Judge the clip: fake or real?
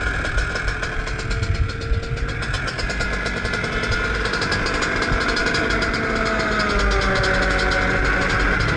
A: real